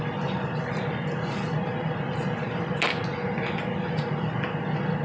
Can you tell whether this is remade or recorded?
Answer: recorded